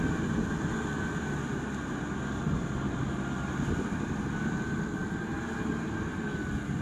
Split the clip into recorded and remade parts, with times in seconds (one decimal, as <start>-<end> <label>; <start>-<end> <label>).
0.0-6.8 recorded